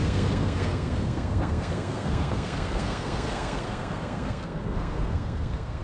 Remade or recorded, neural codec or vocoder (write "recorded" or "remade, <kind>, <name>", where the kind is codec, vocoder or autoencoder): remade, codec, SNAC